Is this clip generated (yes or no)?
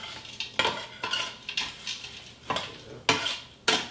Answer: no